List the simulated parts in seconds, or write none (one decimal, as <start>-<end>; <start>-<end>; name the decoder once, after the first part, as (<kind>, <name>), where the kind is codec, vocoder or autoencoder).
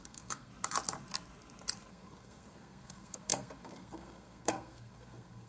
0.0-0.5 (codec, SNAC); 1.9-5.5